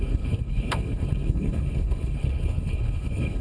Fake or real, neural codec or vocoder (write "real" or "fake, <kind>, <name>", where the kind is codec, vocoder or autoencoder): fake, codec, HILCodec